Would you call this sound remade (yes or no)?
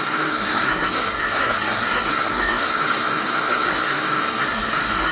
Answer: yes